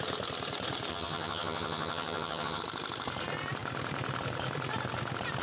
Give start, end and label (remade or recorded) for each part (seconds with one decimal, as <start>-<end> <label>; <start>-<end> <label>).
0.0-0.9 recorded; 0.9-2.6 remade; 2.6-5.4 recorded